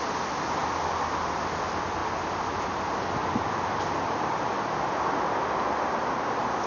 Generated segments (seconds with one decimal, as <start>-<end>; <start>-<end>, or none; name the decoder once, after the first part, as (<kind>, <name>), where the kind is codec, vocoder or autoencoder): none